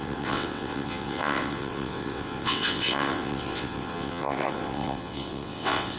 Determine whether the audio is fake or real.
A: fake